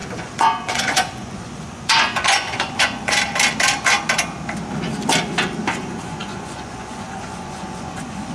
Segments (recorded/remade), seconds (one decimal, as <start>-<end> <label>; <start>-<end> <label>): 0.0-3.2 remade; 3.2-5.6 recorded; 5.6-8.3 remade